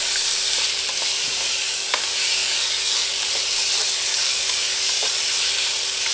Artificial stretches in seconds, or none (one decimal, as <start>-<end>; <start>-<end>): 1.1-2.9; 4.1-5.1